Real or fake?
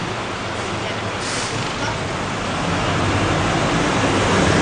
real